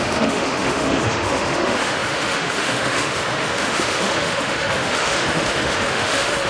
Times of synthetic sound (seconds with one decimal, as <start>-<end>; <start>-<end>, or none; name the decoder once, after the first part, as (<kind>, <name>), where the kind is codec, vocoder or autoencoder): 0.0-6.5 (autoencoder, DAC-VAE)